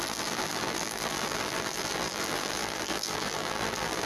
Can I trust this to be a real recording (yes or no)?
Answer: no